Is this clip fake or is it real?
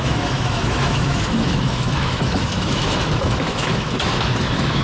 fake